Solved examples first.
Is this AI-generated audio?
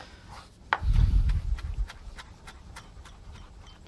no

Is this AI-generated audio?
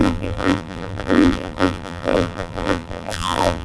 yes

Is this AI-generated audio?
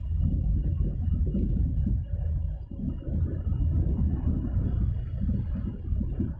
no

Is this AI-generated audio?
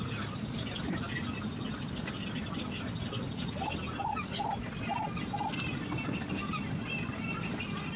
no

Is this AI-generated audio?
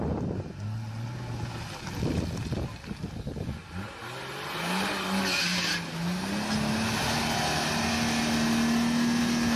no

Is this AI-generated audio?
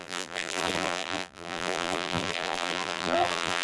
yes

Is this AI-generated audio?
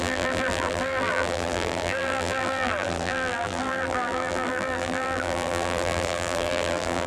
yes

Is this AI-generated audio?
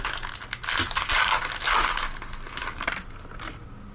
no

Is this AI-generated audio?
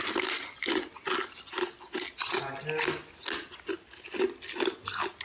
no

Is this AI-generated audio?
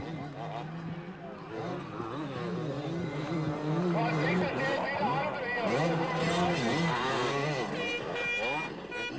no